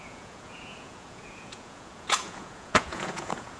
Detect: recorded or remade remade